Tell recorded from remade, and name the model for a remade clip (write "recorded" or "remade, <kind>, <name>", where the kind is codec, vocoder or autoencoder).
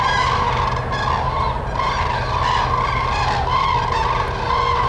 recorded